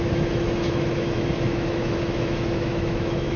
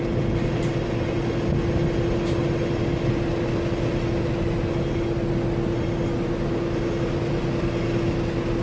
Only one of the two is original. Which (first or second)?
second